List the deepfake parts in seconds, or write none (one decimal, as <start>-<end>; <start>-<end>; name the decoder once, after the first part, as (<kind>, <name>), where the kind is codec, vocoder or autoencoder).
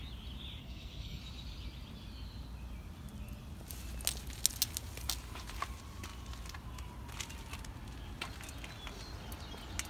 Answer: 0.6-1.2 (codec, SNAC)